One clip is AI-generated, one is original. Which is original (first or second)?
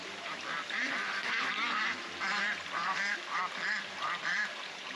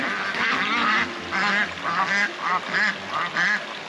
second